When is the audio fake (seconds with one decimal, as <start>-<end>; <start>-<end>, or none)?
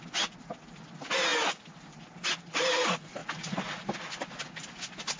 1.3-2.8